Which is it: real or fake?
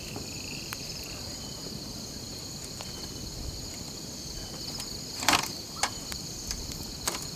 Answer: fake